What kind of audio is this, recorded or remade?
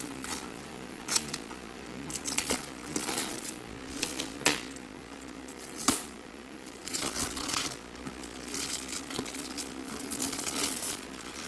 remade